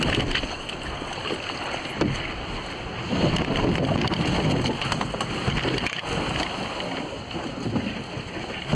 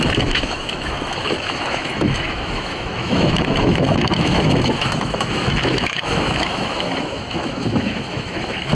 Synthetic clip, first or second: second